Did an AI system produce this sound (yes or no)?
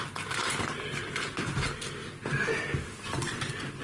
no